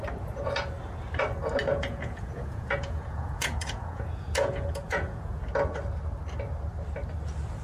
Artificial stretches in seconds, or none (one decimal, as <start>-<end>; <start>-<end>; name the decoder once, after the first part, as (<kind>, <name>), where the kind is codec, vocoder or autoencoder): 1.7-5.4 (vocoder, Vocos)